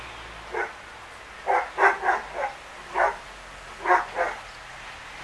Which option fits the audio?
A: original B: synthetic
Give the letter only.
A